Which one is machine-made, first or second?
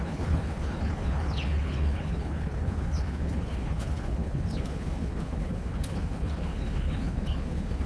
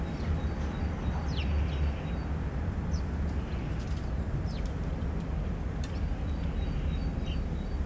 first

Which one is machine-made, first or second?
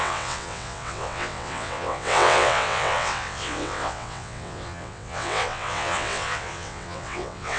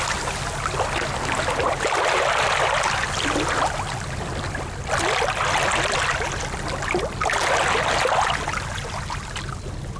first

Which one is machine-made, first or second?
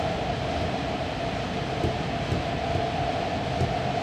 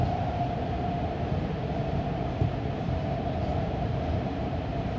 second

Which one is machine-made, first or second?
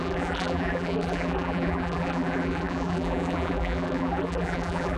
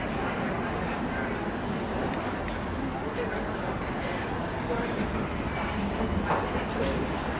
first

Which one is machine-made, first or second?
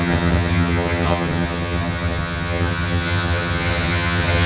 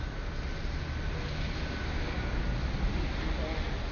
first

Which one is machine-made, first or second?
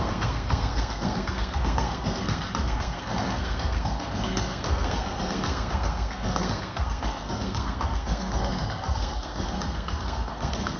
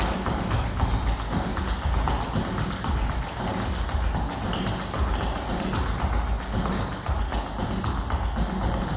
first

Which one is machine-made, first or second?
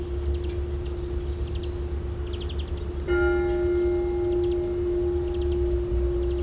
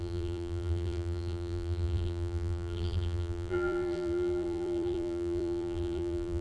second